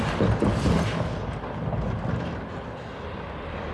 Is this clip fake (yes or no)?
no